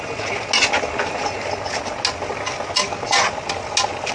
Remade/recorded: recorded